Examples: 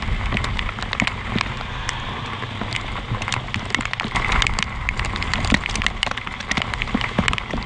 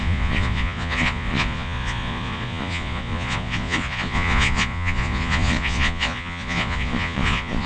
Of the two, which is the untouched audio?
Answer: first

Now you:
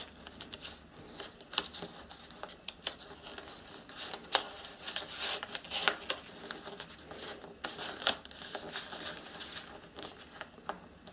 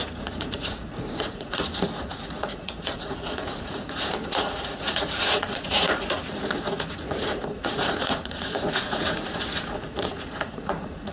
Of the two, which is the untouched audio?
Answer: first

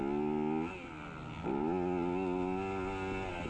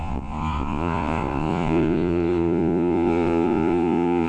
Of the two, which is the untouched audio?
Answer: first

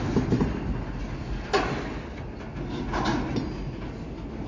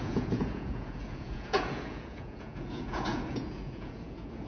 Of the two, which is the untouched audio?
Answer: first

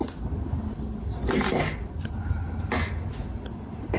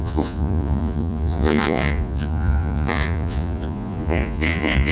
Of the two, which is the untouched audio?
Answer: first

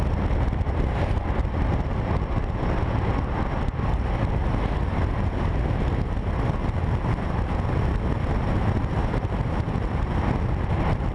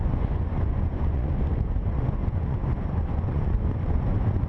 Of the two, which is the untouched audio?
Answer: first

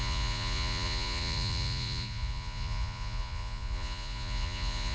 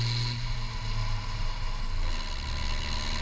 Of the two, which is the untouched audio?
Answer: second